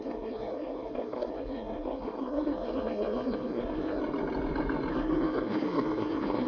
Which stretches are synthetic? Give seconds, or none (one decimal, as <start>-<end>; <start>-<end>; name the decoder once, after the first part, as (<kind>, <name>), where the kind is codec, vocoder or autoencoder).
0.0-4.0 (codec, SNAC); 4.9-6.5